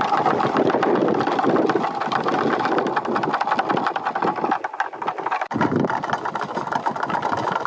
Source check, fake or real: real